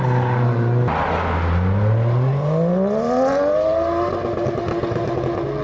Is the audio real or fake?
real